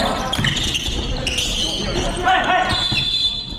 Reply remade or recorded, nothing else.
recorded